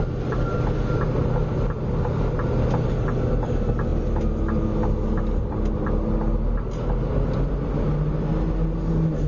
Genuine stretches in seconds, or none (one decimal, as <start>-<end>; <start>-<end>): 0.0-9.3